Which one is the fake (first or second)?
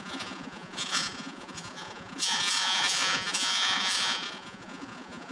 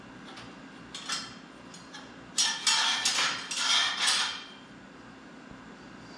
first